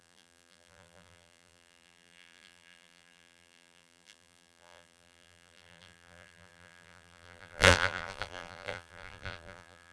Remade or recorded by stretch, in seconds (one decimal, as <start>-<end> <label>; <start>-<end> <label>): 0.0-9.9 remade